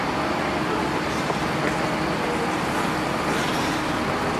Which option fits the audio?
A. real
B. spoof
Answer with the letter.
A